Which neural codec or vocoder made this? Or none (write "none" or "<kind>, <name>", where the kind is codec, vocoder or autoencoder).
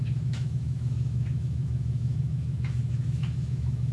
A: autoencoder, DAC-VAE